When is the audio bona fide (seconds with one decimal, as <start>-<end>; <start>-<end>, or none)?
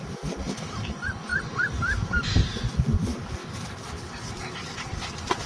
0.0-1.3; 2.6-5.5